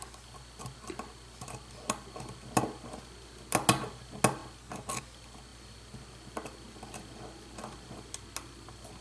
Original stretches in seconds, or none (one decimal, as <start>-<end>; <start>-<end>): 0.0-9.0